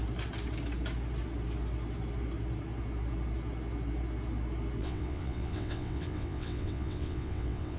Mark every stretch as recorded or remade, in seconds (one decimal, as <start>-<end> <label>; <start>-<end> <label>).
0.0-4.8 recorded; 4.8-7.8 remade